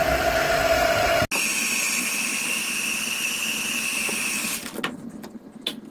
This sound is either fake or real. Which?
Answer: real